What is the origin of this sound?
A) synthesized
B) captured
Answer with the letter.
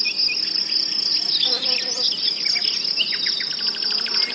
B